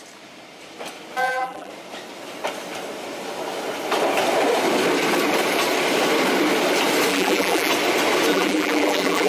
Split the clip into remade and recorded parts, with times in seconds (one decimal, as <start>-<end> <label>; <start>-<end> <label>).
0.0-1.2 recorded; 1.2-1.7 remade; 1.7-7.1 recorded; 7.1-7.7 remade; 7.7-8.3 recorded; 8.3-9.3 remade

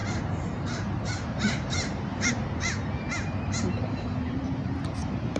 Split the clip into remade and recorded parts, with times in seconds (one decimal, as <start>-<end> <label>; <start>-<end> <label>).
0.0-2.7 remade; 2.7-3.8 recorded; 3.8-5.4 remade

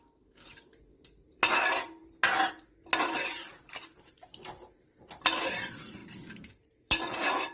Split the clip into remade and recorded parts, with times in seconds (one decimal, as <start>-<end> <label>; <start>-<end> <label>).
0.0-2.0 remade; 2.0-3.0 recorded; 3.0-7.5 remade

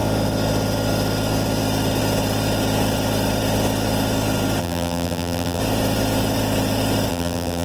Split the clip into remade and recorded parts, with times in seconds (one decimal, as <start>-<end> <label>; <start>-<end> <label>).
0.0-4.6 recorded; 4.6-5.6 remade; 5.6-7.1 recorded; 7.1-7.6 remade

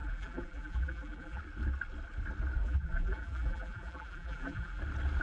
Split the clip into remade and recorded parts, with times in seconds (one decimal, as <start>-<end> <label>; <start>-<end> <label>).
0.0-1.4 remade; 1.4-2.6 recorded; 2.6-4.8 remade; 4.8-5.2 recorded

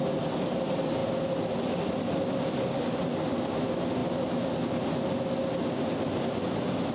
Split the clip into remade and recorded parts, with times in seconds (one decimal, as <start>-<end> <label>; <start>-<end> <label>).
0.0-6.9 recorded

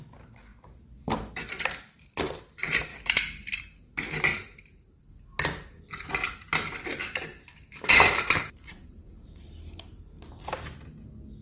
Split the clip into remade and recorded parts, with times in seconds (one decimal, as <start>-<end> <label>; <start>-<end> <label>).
0.0-0.5 recorded; 0.5-2.3 remade; 2.3-2.9 recorded; 2.9-3.8 remade; 3.8-4.3 recorded; 4.3-5.1 remade; 5.1-7.3 recorded; 7.3-9.4 remade; 9.4-11.4 recorded

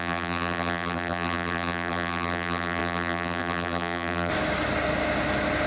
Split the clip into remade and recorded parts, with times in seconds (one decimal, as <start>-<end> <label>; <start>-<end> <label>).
0.0-4.3 remade; 4.3-5.7 recorded